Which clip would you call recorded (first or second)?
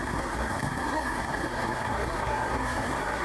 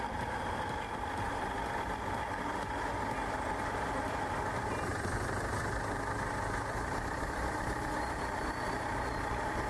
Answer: second